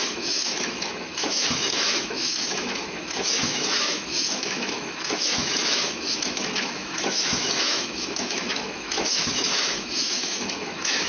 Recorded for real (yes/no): no